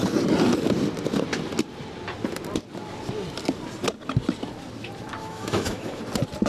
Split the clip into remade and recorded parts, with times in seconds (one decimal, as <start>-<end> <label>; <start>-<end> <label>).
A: 0.0-5.2 recorded; 5.2-6.0 remade; 6.0-6.5 recorded